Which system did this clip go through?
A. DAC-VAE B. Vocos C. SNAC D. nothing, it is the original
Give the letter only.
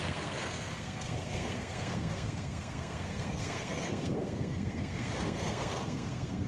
C